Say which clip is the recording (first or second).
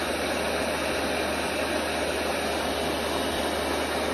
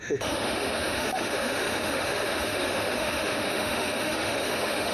first